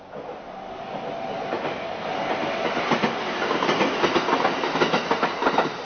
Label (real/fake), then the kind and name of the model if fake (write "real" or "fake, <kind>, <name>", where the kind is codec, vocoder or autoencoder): real